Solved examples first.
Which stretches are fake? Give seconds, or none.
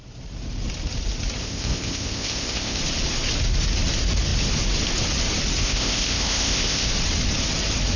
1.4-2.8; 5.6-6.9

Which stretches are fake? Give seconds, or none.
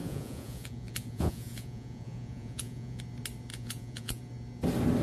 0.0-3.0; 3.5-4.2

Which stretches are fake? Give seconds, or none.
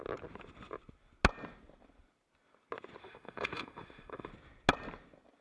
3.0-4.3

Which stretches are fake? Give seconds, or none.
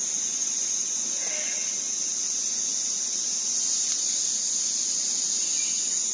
none